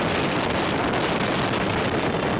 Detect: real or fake real